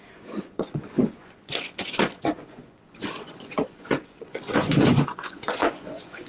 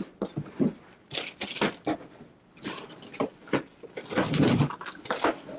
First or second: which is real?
second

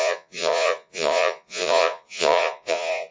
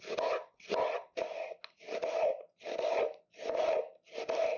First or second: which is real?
second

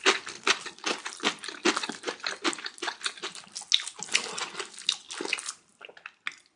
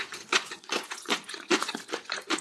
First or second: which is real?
first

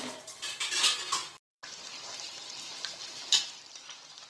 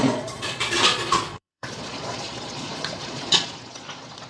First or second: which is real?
first